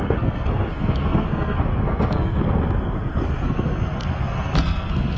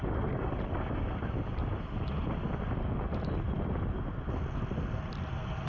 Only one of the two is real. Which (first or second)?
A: second